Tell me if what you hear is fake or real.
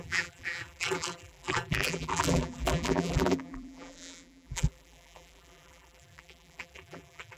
fake